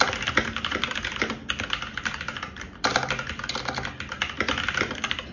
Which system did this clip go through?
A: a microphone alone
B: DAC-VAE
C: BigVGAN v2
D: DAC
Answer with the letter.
A